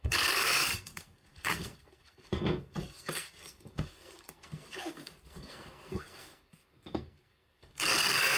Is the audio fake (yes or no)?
yes